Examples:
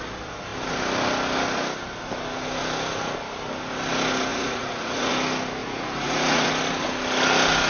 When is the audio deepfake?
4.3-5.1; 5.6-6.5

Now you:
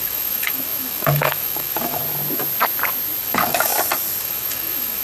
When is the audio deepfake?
0.0-2.0; 3.2-3.7; 4.2-5.0

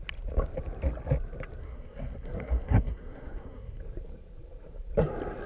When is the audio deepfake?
1.6-3.8